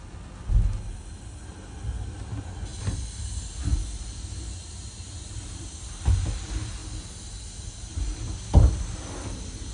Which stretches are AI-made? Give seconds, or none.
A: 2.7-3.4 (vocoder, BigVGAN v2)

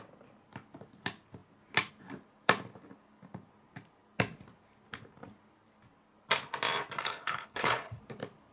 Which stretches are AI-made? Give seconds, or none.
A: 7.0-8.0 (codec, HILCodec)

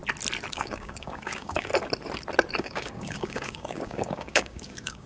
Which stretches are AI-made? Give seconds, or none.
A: 0.5-1.7 (codec, DAC); 2.6-5.1